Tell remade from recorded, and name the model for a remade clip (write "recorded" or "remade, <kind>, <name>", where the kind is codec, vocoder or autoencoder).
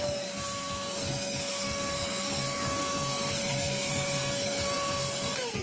remade, codec, SNAC